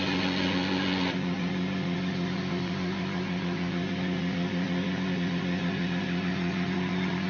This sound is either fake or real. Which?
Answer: fake